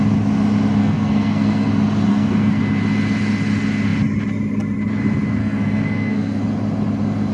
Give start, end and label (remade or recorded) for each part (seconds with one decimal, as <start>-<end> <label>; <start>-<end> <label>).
0.0-0.8 recorded; 0.8-1.7 remade; 1.7-2.1 recorded; 2.1-2.6 remade; 2.6-5.4 recorded; 5.4-6.4 remade; 6.4-7.3 recorded